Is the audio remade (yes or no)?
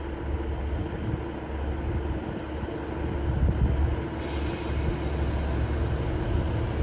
no